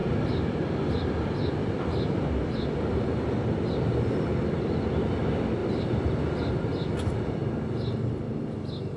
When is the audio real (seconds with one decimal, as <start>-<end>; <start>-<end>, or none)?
0.0-9.0